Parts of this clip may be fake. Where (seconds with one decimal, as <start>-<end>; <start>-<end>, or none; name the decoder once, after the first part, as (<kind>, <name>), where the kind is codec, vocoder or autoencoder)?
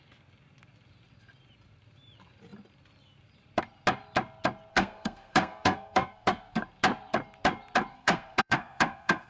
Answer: 4.7-6.6 (codec, SNAC); 7.9-9.3